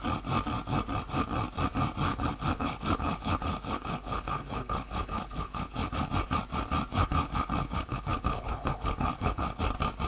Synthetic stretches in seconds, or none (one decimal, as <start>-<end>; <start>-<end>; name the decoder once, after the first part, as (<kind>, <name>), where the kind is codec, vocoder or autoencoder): 2.1-6.1 (codec, HILCodec); 6.9-9.6